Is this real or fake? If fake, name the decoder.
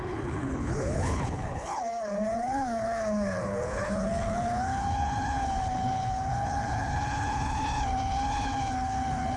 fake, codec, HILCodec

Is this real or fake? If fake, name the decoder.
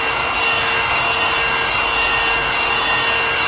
real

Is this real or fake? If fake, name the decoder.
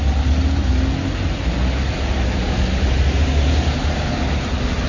real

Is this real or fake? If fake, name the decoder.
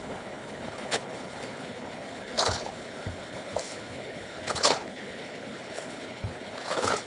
fake, codec, HILCodec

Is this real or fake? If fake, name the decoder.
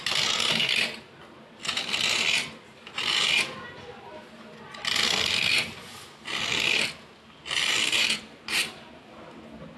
real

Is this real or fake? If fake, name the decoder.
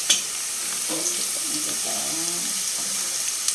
real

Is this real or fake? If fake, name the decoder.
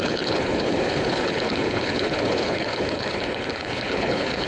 fake, codec, HILCodec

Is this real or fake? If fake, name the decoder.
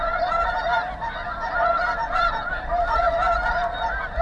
real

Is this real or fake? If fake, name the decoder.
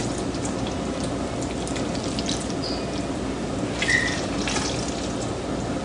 real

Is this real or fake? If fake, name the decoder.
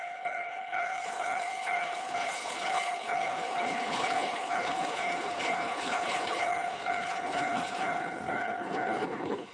fake, codec, HILCodec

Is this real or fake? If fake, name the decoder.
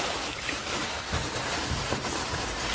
real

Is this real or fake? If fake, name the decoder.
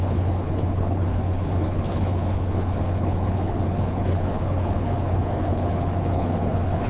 fake, codec, HILCodec